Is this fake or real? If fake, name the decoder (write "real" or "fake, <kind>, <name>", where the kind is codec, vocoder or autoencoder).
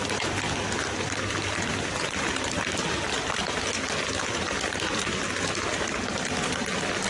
real